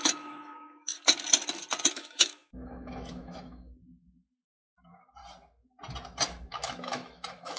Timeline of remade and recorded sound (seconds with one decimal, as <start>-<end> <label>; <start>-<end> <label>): 0.0-0.9 remade; 0.9-1.9 recorded; 1.9-5.2 remade; 5.2-6.5 recorded; 6.5-7.6 remade